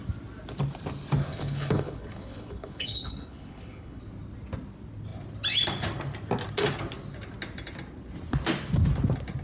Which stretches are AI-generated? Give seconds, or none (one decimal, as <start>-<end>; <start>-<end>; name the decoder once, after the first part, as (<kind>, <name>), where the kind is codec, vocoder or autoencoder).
1.3-4.0 (codec, HILCodec)